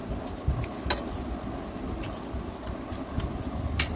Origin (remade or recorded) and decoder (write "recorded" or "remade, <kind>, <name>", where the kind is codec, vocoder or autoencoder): recorded